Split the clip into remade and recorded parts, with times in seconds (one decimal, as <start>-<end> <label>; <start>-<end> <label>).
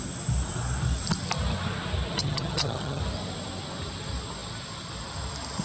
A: 0.0-2.2 recorded; 2.2-3.0 remade; 3.0-5.6 recorded